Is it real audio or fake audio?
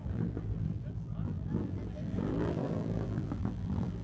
fake